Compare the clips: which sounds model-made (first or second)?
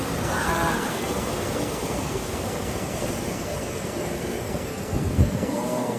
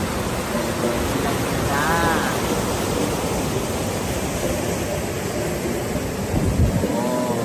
first